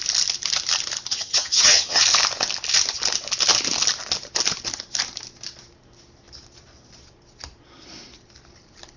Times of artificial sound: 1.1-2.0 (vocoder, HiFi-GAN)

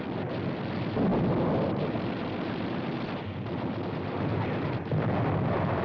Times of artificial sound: none